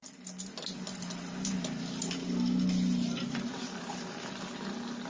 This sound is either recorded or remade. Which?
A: recorded